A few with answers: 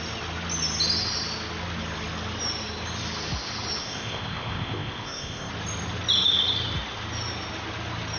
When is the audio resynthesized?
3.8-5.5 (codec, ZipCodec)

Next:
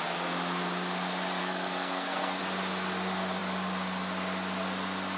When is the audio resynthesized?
1.4-2.4 (codec, SNAC)

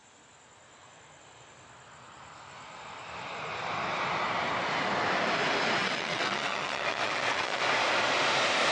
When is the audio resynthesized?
5.8-7.6 (vocoder, WaveNeXt)

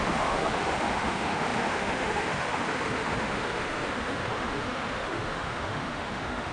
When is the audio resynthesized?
0.0-6.5 (autoencoder, DAC-VAE)

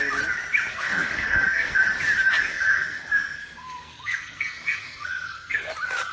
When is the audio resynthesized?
0.7-1.8 (codec, SNAC); 2.4-5.6

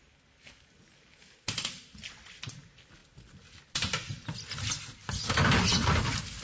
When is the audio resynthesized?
none